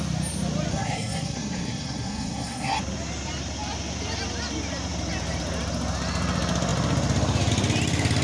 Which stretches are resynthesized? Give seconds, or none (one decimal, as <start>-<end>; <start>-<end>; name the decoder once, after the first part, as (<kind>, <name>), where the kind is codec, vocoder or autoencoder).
0.7-2.8 (codec, SNAC)